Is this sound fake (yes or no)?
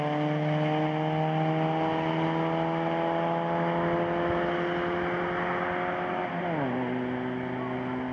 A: no